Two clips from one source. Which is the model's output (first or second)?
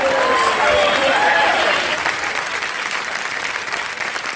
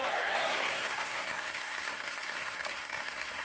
second